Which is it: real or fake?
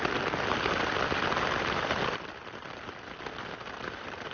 real